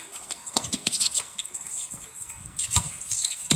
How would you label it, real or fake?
fake